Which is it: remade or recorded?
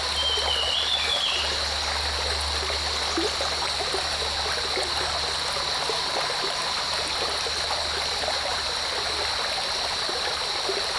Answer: recorded